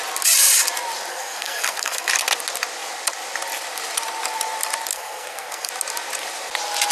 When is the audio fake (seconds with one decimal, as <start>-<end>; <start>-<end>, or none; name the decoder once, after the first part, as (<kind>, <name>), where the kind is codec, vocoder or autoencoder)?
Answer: 1.1-2.1 (codec, SNAC); 4.9-5.7